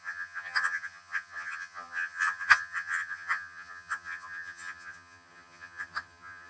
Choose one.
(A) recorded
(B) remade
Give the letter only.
B